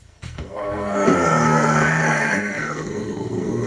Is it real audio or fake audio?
fake